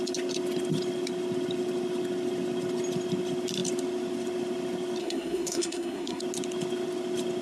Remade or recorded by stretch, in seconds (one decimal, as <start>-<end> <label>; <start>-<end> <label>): 0.0-5.0 recorded; 5.0-6.2 remade; 6.2-7.4 recorded